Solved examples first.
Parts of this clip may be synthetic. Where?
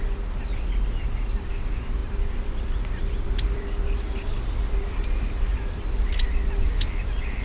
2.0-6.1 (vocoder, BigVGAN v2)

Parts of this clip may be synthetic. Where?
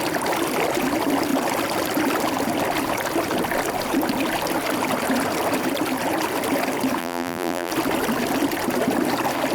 7.0-7.7 (vocoder, BigVGAN v2)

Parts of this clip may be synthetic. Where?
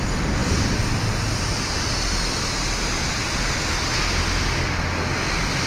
3.0-4.0 (vocoder, BigVGAN v2)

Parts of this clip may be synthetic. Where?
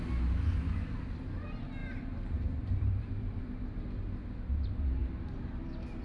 1.8-4.0 (vocoder, BigVGAN v2)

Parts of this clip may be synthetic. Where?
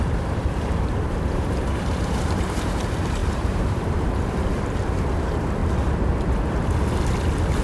0.0-5.6 (vocoder, BigVGAN v2)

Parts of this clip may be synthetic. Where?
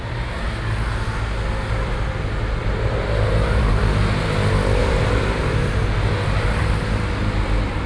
2.6-3.8 (vocoder, BigVGAN v2); 4.8-5.8